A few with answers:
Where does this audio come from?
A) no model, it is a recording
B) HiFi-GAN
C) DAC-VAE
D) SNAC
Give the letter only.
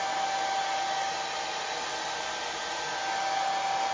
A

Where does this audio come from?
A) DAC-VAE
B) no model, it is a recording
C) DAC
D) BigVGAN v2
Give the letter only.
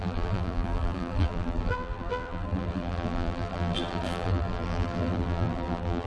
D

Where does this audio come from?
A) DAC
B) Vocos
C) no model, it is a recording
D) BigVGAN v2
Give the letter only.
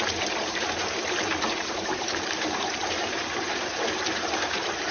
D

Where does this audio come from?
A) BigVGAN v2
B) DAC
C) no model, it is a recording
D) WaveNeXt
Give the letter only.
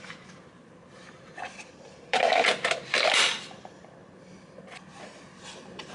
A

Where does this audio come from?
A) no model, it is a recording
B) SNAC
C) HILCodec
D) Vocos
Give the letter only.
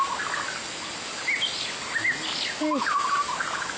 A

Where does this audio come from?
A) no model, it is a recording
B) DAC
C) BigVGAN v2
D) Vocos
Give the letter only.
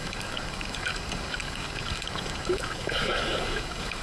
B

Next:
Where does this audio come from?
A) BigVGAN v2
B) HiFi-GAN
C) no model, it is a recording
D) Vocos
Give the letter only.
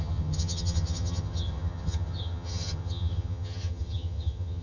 B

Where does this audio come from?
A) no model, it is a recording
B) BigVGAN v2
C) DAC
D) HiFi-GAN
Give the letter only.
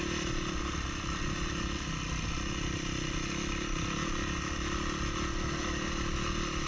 A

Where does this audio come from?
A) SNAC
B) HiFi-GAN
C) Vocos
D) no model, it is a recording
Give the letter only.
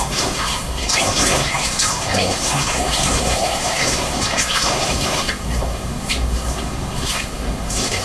A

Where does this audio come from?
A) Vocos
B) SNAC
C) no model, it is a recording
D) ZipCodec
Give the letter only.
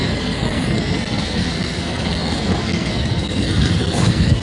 B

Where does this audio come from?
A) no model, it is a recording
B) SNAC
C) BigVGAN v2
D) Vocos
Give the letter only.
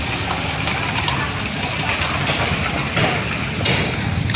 A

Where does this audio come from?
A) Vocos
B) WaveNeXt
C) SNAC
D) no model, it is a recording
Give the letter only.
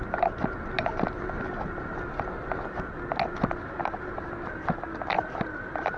D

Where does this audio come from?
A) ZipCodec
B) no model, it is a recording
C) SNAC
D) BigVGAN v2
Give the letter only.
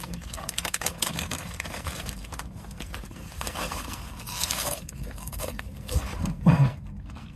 C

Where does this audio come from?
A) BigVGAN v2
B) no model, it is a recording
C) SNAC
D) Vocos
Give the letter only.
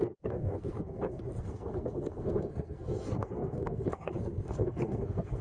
C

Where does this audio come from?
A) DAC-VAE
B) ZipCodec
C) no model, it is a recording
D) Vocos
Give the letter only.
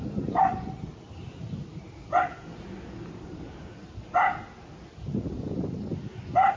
C